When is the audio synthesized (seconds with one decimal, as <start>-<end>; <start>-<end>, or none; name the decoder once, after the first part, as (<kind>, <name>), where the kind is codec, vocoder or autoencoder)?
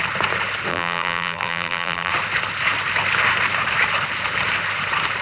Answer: 0.7-2.1 (vocoder, BigVGAN v2)